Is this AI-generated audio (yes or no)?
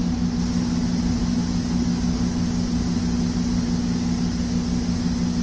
no